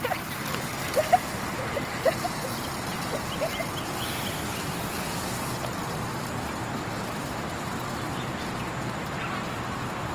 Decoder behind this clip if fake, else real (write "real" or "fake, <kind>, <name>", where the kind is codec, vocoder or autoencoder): real